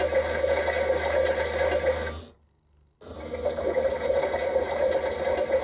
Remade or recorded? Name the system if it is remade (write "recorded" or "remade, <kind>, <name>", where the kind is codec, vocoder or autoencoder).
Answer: recorded